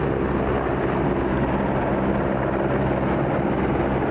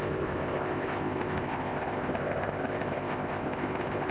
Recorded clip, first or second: first